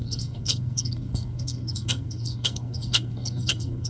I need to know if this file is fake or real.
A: fake